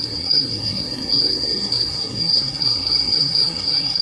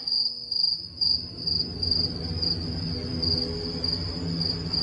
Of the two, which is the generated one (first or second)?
first